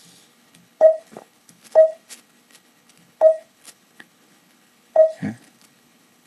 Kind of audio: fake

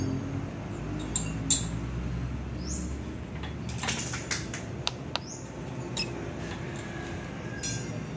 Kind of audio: real